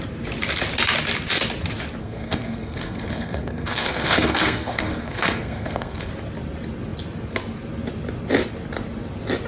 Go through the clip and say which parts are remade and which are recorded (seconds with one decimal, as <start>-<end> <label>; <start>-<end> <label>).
0.0-2.0 recorded; 2.0-6.1 remade; 6.1-9.5 recorded